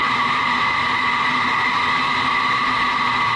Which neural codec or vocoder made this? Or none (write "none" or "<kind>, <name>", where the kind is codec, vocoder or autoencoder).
none